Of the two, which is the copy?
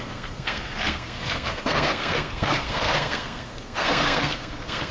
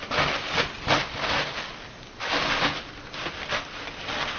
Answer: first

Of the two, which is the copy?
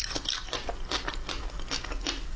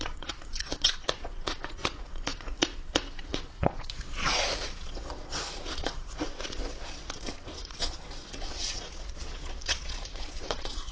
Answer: second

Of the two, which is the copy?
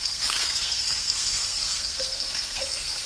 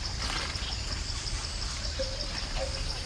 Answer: first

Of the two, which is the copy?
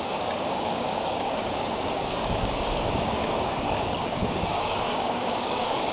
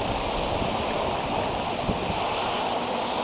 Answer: first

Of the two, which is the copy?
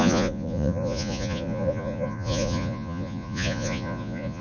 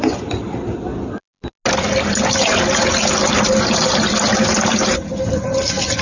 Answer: first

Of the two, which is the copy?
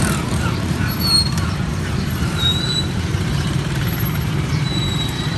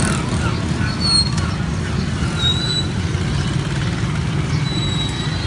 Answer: first